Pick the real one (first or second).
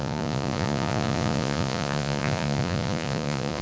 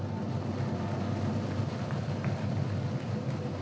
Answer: second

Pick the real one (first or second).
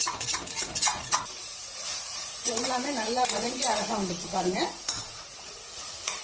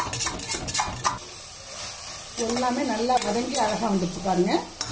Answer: second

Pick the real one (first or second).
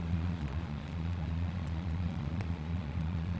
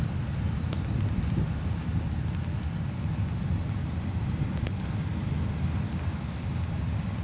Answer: second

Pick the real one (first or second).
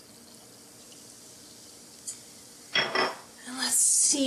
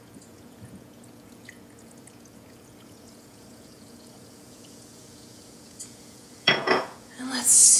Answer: first